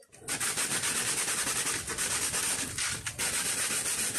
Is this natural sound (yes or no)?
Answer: yes